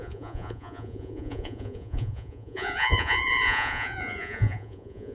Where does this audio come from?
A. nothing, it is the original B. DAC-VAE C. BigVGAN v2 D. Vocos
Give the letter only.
D